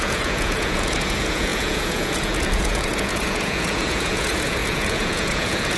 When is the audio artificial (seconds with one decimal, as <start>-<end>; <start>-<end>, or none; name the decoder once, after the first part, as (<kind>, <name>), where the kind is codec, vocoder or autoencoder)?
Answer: 0.0-5.8 (vocoder, Vocos)